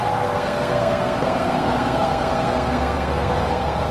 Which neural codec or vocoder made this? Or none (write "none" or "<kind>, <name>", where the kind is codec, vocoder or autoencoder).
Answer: codec, SNAC